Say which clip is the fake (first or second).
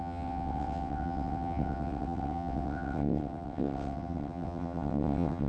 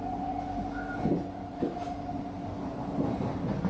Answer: first